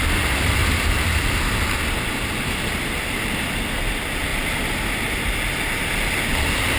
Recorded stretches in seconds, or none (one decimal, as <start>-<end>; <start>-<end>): 0.0-6.8